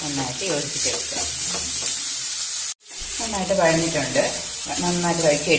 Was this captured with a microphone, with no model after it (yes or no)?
yes